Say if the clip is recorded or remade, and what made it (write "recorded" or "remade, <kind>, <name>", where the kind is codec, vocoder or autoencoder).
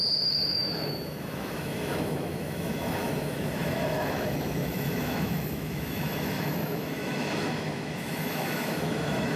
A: remade, autoencoder, DAC-VAE